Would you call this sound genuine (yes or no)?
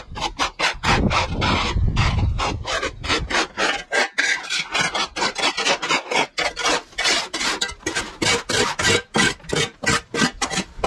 yes